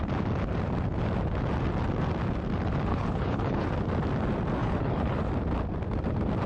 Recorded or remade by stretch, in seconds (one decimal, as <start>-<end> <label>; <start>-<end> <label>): 0.0-2.9 recorded; 2.9-3.7 remade; 3.7-4.6 recorded; 4.6-5.3 remade; 5.3-6.5 recorded